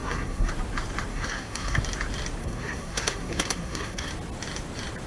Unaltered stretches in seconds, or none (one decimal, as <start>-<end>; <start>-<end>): 0.5-1.1; 1.8-2.4; 4.1-5.1